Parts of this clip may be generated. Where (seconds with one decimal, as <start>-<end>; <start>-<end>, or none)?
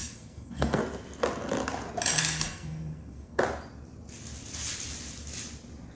0.0-0.8; 2.2-3.4